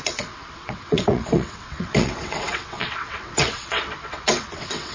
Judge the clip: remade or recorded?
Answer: remade